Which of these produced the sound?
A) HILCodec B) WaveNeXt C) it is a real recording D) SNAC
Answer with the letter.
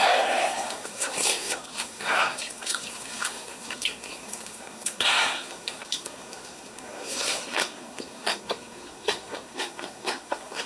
D